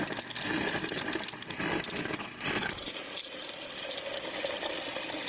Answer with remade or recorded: recorded